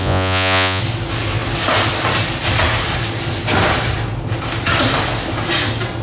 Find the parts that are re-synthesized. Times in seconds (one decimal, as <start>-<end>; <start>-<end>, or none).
0.0-0.8